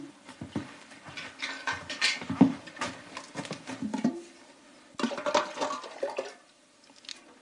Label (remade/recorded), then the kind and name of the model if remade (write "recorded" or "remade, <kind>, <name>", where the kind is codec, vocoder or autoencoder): recorded